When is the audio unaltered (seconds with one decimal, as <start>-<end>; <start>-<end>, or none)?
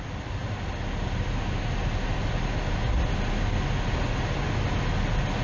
0.0-5.4